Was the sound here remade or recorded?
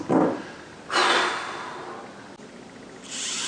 recorded